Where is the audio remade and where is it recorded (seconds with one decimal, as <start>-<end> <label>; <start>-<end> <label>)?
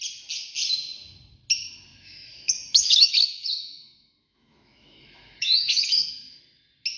0.0-1.9 recorded; 1.9-6.1 remade; 6.1-7.0 recorded